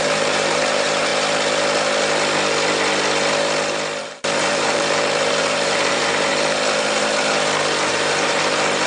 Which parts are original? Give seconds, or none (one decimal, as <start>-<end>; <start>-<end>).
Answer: 1.1-4.0; 6.3-7.9